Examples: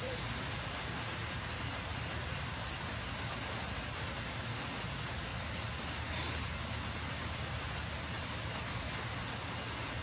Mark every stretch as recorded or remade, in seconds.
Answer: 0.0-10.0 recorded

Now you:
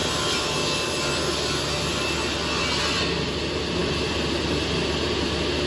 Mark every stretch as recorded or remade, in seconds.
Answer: 0.0-5.7 recorded